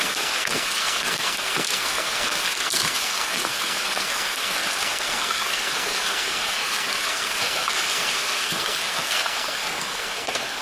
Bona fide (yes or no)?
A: no